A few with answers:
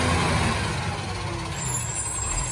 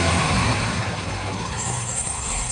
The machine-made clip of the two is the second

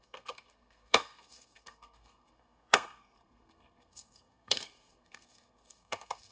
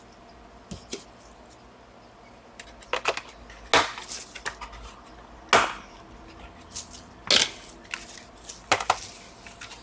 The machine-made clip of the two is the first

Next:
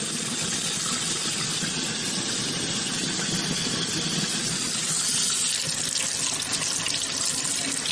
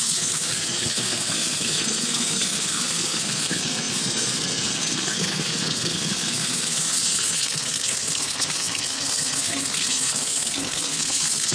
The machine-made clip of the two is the second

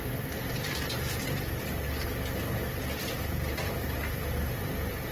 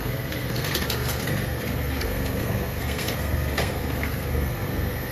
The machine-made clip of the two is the second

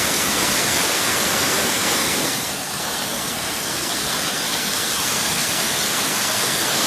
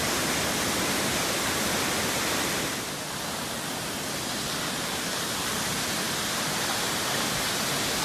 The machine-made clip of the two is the first